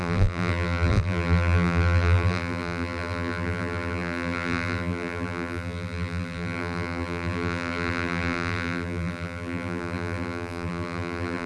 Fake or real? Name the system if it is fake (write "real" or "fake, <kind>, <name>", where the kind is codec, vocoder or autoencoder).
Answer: fake, vocoder, BigVGAN v2